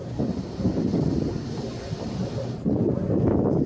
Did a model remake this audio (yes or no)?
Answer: no